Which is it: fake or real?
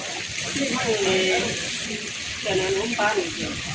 real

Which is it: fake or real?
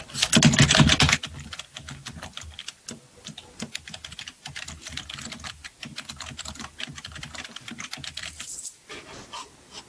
real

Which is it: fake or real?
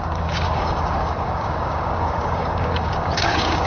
fake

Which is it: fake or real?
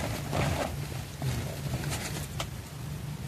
real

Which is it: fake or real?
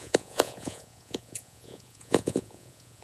fake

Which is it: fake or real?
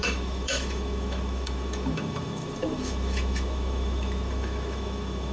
fake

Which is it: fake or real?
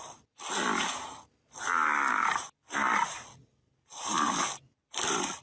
real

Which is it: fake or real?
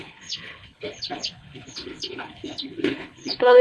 fake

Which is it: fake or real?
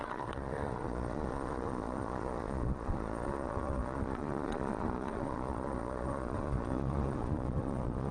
fake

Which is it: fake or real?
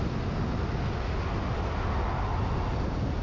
real